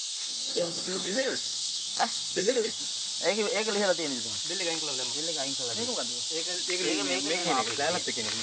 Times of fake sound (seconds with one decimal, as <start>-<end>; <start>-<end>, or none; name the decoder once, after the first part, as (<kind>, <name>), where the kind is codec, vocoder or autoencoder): 0.0-2.8 (codec, SNAC)